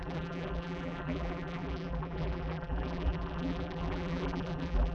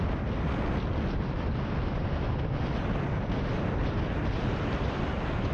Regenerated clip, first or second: first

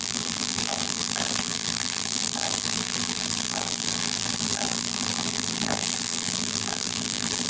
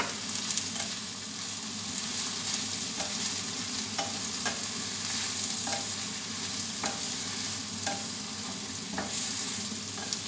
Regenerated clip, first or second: first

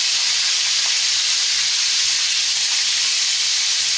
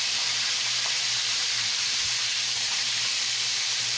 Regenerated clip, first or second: second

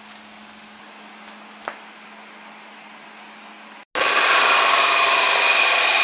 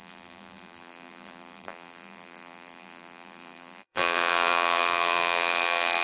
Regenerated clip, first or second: second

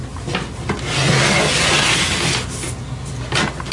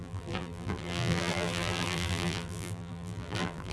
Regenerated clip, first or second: second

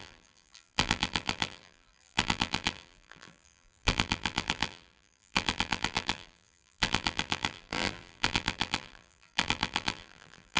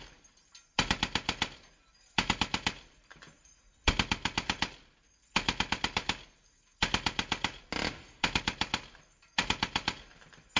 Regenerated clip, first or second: first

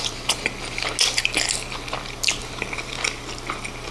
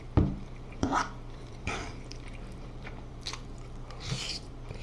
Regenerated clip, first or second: second